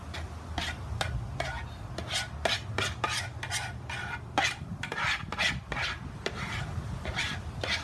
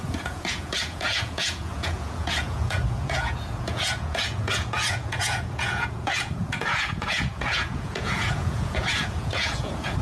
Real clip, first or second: first